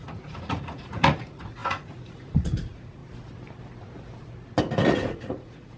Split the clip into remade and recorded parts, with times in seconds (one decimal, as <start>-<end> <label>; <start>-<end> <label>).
0.0-3.0 remade; 3.0-4.6 recorded; 4.6-5.8 remade